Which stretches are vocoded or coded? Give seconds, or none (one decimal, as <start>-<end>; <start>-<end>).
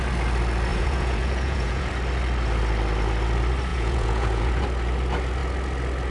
0.7-1.9; 3.7-4.6